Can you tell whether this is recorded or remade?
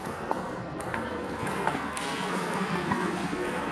remade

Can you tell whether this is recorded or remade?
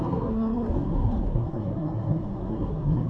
remade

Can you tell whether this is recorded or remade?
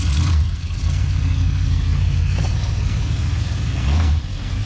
remade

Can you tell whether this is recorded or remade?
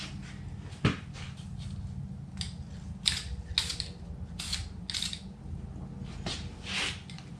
recorded